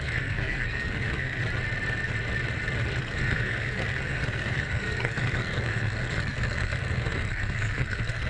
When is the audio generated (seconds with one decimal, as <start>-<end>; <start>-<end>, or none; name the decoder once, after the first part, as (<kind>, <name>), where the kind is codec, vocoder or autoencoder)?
0.0-1.4 (codec, SNAC); 3.0-8.3